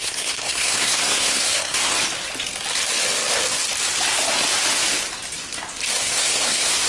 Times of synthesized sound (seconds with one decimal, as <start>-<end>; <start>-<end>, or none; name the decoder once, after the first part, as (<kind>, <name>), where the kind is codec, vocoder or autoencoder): 0.0-1.9 (codec, SNAC); 6.0-6.9